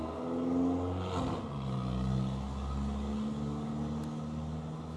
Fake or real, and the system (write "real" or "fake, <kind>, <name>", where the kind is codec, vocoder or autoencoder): real